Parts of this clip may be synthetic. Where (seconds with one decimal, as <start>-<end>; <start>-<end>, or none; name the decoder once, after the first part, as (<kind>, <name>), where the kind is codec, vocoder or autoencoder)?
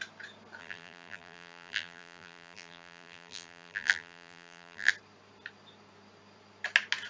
0.6-4.9 (vocoder, BigVGAN v2)